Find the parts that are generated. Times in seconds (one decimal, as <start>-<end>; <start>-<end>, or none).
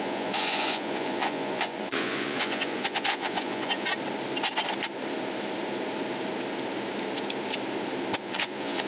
0.0-3.9; 8.2-8.9